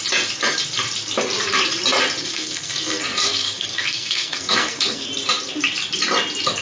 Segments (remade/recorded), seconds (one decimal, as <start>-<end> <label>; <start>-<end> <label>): 0.0-2.2 recorded; 2.2-5.1 remade; 5.1-6.6 recorded